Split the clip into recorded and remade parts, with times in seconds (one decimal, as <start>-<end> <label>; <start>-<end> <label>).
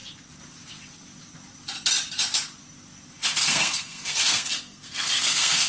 0.0-3.4 recorded; 3.4-5.7 remade